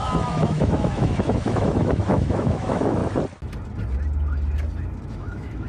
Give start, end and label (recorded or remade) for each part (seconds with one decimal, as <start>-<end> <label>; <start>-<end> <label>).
0.0-3.0 remade; 3.0-5.1 recorded; 5.1-5.7 remade

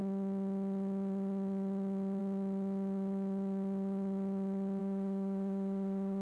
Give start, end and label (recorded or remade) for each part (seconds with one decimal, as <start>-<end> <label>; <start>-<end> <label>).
0.0-4.8 recorded; 4.8-6.2 remade

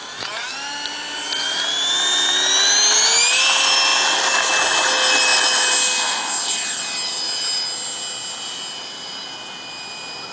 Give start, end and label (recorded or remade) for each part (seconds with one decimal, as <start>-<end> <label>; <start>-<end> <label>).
0.0-10.3 recorded

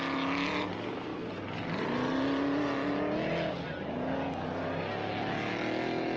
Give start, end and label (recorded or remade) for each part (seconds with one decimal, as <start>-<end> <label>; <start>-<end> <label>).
0.0-6.2 recorded

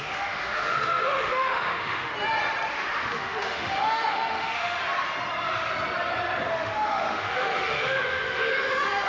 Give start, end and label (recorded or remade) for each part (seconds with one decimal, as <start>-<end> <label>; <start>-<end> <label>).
0.0-2.1 remade; 2.1-2.7 recorded; 2.7-4.8 remade; 4.8-6.5 recorded; 6.5-9.1 remade

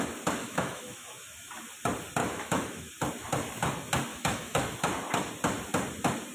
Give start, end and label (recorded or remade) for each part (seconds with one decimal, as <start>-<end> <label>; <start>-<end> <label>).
0.0-0.4 recorded; 0.4-1.5 remade; 1.5-2.2 recorded; 2.2-2.9 remade; 2.9-4.1 recorded; 4.1-4.8 remade; 4.8-6.3 recorded

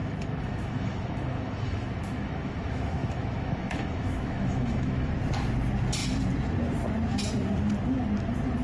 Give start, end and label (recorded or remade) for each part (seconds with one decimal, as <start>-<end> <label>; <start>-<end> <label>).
0.0-5.1 remade; 5.1-8.6 recorded

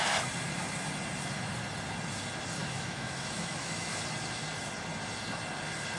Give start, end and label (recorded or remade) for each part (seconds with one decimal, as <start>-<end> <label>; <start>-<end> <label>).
0.0-2.6 recorded; 2.6-4.0 remade; 4.0-6.0 recorded